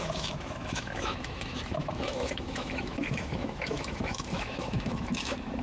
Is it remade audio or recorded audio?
remade